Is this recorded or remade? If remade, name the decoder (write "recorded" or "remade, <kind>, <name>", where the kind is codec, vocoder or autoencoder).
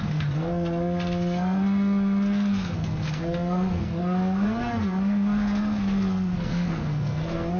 remade, codec, SNAC